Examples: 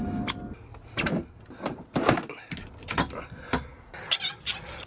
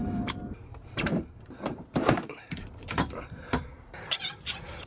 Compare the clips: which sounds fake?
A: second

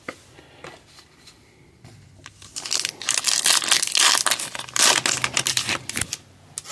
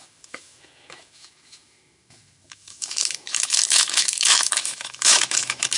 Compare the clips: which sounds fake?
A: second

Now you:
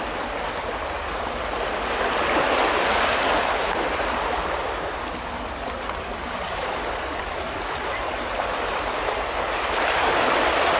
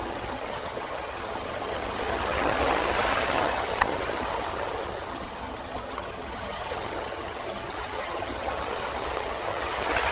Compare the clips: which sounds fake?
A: second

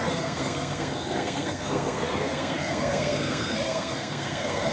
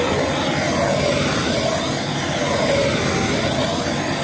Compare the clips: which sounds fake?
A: first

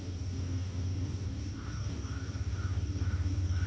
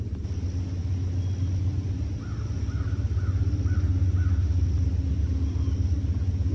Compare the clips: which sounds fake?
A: first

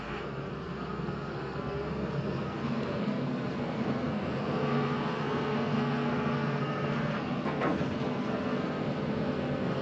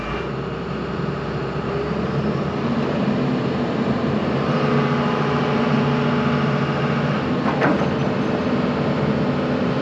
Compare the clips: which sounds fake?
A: first